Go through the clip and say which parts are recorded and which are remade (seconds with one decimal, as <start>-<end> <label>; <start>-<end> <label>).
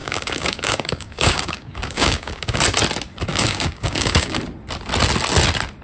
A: 0.0-2.6 remade; 2.6-3.3 recorded; 3.3-4.4 remade; 4.4-5.8 recorded